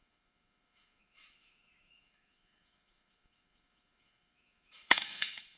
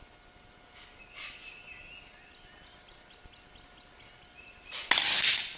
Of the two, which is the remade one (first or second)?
first